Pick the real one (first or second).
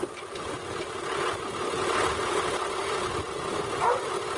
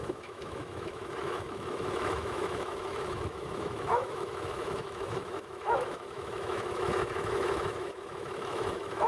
first